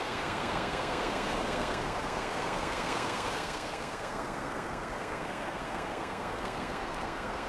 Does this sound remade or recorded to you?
remade